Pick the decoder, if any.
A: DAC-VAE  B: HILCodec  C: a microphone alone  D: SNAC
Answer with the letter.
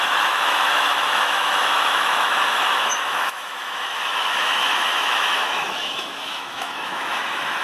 A